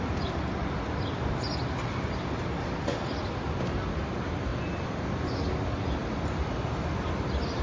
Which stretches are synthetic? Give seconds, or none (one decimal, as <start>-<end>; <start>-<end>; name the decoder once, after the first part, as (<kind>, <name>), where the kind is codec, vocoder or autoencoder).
4.5-5.5 (vocoder, BigVGAN v2)